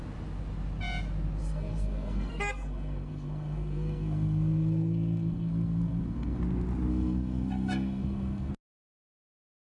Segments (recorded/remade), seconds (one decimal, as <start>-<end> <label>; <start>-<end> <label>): 0.0-1.4 recorded; 1.4-6.4 remade; 6.4-6.9 recorded; 6.9-8.5 remade; 8.5-9.7 recorded